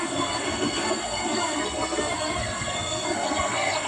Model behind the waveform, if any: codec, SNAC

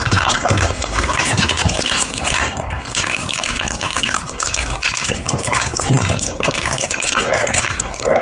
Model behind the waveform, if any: codec, SNAC